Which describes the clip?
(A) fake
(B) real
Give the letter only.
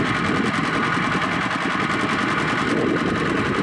B